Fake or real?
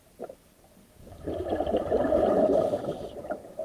fake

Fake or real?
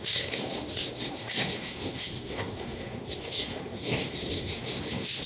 fake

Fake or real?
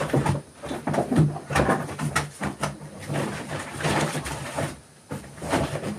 fake